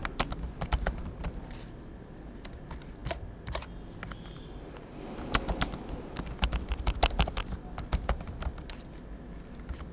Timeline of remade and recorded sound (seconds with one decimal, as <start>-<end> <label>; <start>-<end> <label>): 0.0-9.9 recorded